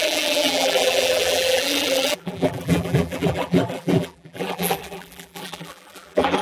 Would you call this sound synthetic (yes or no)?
yes